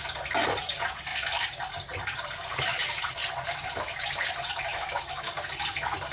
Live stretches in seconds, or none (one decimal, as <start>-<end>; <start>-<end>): 0.0-4.7; 5.3-6.1